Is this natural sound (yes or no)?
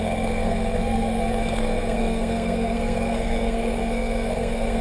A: no